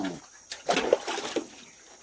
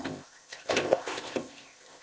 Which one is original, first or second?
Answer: first